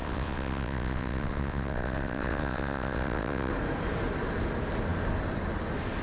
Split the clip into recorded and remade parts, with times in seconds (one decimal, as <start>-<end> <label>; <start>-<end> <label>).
0.0-3.5 remade; 3.5-6.0 recorded